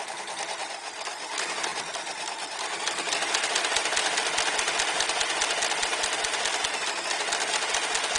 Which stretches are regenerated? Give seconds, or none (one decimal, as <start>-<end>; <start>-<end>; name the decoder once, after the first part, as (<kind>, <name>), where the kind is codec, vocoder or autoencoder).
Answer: none